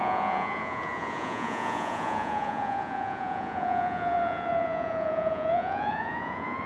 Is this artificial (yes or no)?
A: yes